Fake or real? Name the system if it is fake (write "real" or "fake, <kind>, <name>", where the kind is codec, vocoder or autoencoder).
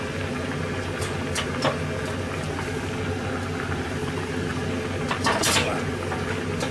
real